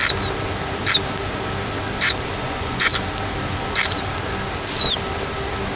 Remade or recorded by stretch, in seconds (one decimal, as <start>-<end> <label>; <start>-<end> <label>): 0.0-2.4 recorded; 2.4-2.9 remade; 2.9-5.8 recorded